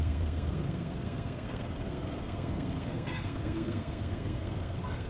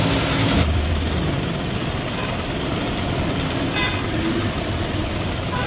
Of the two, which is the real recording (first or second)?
second